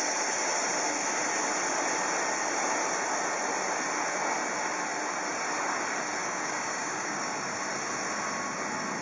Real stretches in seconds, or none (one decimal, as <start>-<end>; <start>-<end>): 0.0-6.2; 7.3-9.0